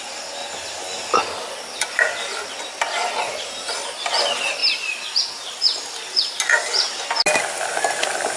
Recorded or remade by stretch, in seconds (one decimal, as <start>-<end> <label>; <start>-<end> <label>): 0.0-8.4 recorded